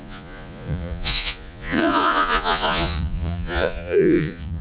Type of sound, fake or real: fake